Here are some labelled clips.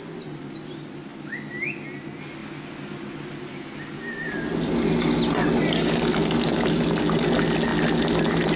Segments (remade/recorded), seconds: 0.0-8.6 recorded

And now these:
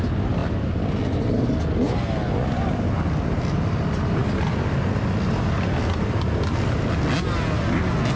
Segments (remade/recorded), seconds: 0.0-8.2 recorded

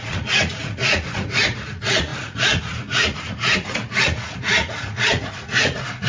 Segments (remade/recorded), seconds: 0.0-6.1 remade

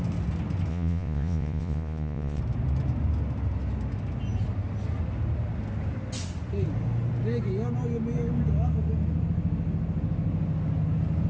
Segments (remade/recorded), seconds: 0.0-0.7 recorded; 0.7-2.4 remade; 2.4-11.3 recorded

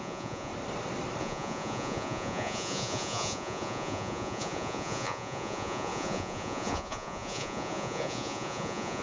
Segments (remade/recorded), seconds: 0.0-0.5 remade; 0.5-1.2 recorded; 1.2-9.0 remade